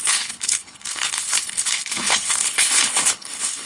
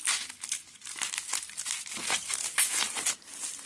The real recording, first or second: second